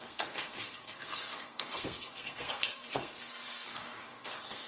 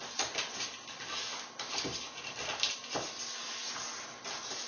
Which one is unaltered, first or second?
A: second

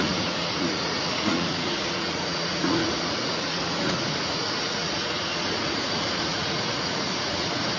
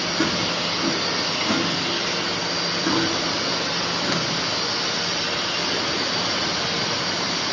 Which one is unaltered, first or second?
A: second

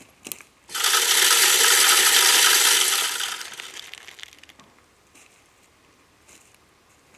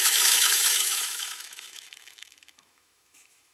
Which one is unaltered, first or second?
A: first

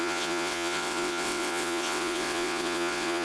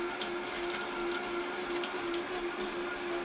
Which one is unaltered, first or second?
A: second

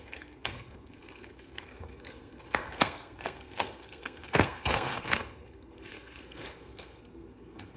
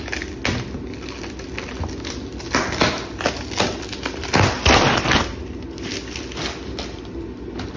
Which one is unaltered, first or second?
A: second